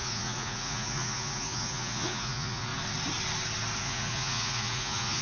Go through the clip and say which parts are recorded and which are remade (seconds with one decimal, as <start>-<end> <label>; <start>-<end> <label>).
0.0-2.7 remade; 2.7-3.8 recorded; 3.8-5.2 remade